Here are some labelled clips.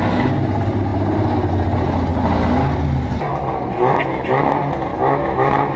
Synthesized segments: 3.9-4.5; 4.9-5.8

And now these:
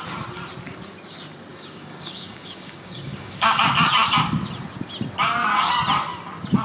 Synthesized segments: 1.5-3.6